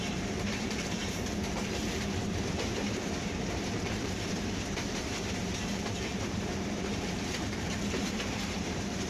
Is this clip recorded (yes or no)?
no